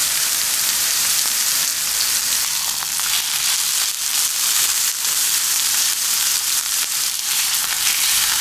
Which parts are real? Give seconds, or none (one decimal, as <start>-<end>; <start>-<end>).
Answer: 1.7-5.4